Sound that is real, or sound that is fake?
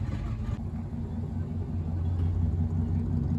real